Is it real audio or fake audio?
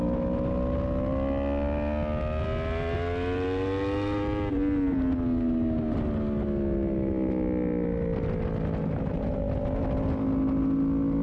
real